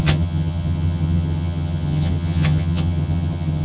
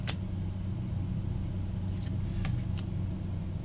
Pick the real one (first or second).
second